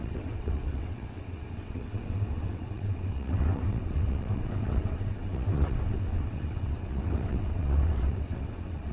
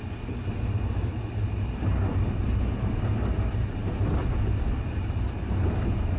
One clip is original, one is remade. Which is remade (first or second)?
first